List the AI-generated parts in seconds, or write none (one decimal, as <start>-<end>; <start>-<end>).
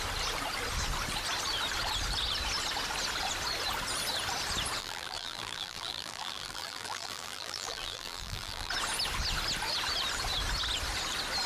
4.8-8.7